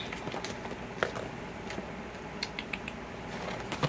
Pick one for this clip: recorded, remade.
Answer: recorded